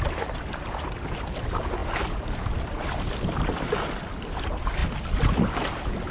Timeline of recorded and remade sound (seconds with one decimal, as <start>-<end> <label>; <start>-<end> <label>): 0.0-6.1 recorded